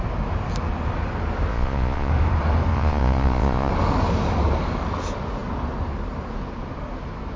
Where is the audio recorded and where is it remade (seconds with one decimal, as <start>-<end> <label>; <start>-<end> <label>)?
0.0-1.5 recorded; 1.5-2.1 remade; 2.1-2.7 recorded; 2.7-3.7 remade; 3.7-7.4 recorded